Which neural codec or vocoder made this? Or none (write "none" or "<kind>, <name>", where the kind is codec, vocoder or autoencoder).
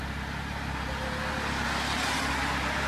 none